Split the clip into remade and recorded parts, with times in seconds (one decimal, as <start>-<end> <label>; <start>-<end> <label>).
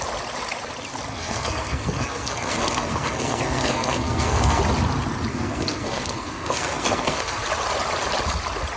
0.0-1.1 recorded; 1.1-4.6 remade; 4.6-5.3 recorded; 5.3-7.4 remade; 7.4-8.8 recorded